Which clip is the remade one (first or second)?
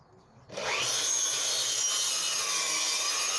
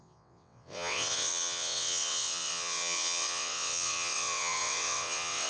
second